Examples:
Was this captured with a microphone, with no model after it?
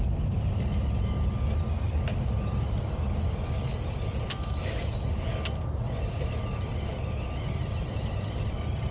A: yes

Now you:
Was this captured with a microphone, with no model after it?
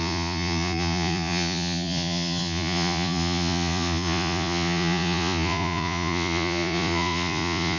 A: no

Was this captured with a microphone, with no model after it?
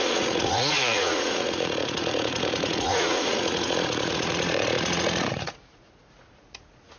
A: no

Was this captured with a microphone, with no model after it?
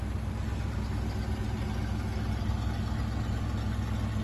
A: yes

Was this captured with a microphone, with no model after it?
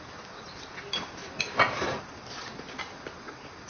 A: yes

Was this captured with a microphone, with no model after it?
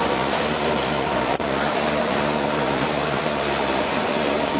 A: no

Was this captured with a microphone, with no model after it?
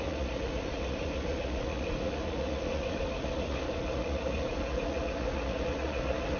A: no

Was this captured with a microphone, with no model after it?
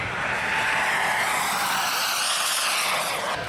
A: yes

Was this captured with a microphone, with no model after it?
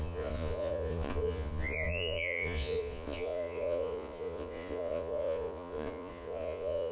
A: no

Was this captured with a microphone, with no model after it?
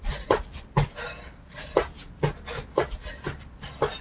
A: yes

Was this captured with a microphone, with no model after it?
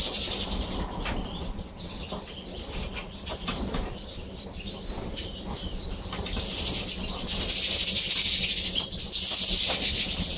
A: yes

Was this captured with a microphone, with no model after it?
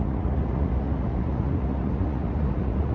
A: no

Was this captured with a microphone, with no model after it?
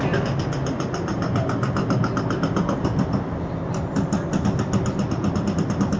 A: yes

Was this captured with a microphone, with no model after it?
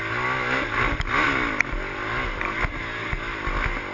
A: yes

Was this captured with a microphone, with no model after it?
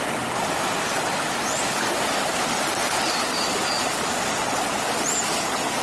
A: yes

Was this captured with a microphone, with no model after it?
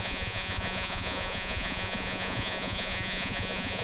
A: no